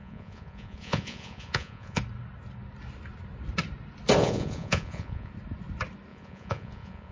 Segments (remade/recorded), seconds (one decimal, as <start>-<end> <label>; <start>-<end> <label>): 0.0-2.0 remade; 2.0-4.2 recorded; 4.2-5.3 remade; 5.3-6.1 recorded; 6.1-7.1 remade